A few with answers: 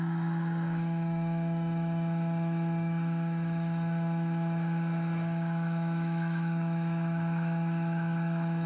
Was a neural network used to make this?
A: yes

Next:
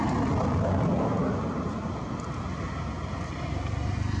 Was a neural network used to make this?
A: no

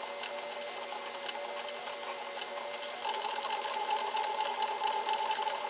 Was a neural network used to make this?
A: no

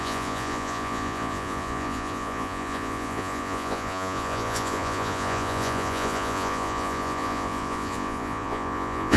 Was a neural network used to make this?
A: yes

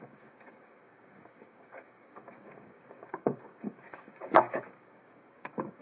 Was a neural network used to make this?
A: yes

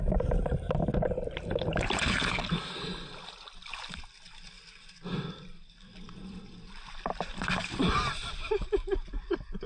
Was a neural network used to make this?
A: no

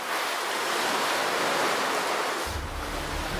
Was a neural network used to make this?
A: no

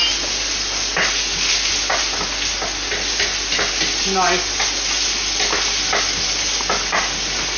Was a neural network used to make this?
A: no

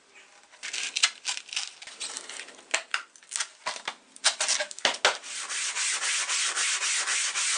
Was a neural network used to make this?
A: no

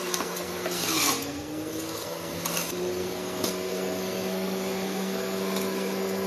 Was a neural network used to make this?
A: yes